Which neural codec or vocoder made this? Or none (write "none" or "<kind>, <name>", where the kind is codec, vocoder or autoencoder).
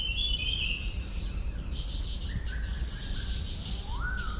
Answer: none